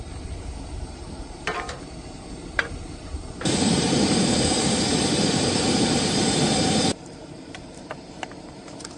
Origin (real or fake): fake